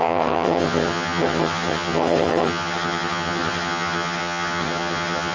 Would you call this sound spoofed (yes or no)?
yes